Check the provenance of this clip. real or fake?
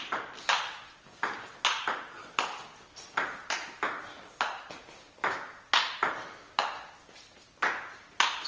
real